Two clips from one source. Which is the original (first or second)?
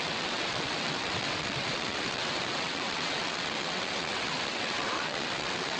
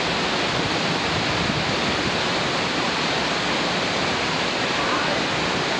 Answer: second